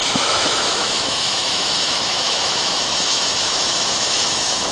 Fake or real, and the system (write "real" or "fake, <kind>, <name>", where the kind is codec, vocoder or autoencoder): fake, autoencoder, DAC-VAE